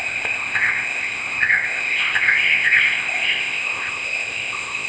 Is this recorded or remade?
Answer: remade